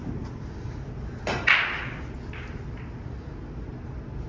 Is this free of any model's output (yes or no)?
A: yes